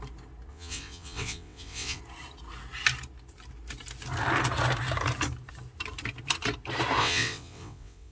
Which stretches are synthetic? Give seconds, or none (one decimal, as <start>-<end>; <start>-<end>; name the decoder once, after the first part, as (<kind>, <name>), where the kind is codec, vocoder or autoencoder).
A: 0.5-2.0 (vocoder, WaveNeXt); 7.0-8.1